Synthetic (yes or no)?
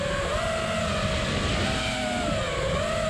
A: no